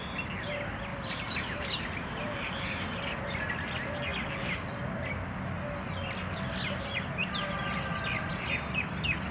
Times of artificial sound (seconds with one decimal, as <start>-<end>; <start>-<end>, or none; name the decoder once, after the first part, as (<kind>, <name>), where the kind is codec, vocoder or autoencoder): 0.9-3.2 (vocoder, BigVGAN v2); 8.3-8.9